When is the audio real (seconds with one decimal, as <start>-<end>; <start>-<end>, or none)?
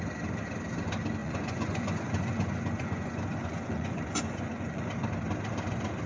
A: 0.0-1.2; 4.9-6.1